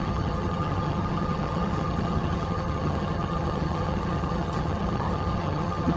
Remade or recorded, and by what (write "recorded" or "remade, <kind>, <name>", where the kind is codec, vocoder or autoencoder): remade, vocoder, HiFi-GAN